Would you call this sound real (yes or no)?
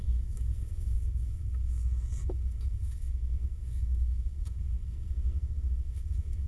no